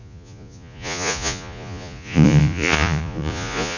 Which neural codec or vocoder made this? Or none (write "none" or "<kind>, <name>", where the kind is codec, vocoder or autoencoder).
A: vocoder, Vocos